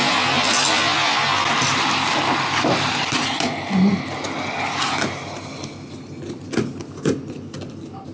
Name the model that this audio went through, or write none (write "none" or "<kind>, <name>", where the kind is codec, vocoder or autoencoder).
none